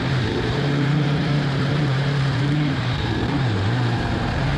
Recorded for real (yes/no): no